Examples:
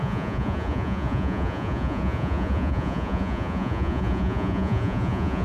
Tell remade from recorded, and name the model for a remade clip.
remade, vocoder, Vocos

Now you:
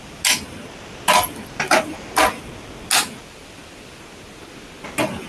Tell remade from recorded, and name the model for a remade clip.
recorded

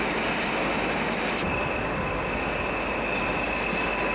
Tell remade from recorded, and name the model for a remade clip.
recorded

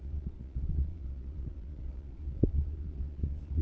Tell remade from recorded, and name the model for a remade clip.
remade, vocoder, Vocos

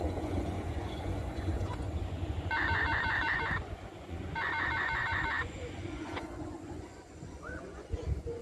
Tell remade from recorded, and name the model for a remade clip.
remade, vocoder, Vocos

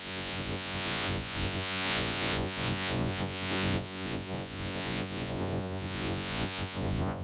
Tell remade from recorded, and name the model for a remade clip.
remade, vocoder, Vocos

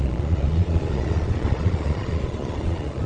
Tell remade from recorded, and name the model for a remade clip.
remade, vocoder, Vocos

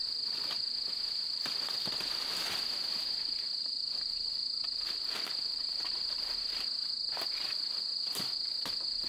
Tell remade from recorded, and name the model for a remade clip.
recorded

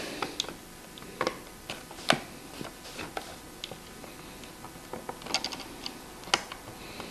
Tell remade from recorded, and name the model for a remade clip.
recorded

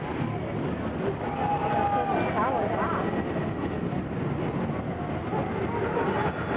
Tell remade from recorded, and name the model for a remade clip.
recorded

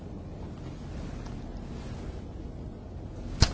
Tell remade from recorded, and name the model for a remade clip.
recorded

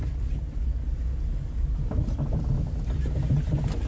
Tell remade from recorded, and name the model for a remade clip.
recorded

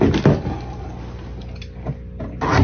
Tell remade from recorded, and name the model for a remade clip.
recorded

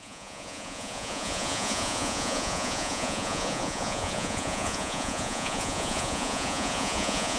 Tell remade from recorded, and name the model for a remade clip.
remade, vocoder, Vocos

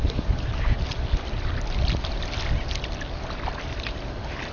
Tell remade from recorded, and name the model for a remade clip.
recorded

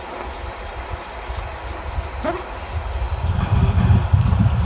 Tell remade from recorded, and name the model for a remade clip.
recorded